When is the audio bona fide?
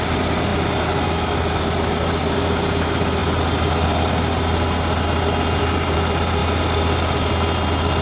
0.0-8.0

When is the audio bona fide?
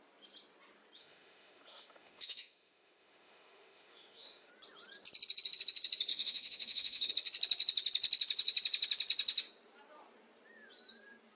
0.0-1.0; 4.5-6.1; 7.1-11.4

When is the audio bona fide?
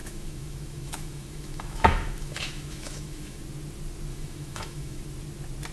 3.4-4.1; 5.0-5.7